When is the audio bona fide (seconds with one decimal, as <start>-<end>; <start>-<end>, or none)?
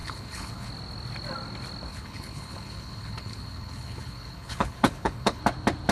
0.7-1.9; 5.4-5.9